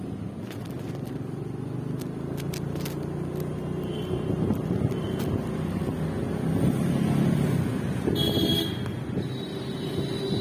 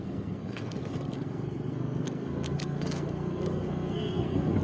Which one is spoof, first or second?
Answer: second